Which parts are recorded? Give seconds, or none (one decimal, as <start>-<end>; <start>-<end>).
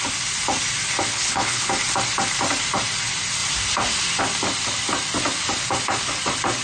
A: 0.0-1.1; 1.7-6.6